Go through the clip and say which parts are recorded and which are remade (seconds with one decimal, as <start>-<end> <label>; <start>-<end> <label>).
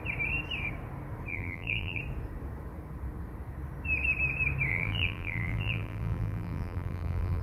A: 0.0-1.3 recorded; 1.3-2.0 remade; 2.0-4.7 recorded; 4.7-7.4 remade